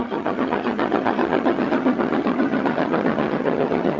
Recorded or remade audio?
remade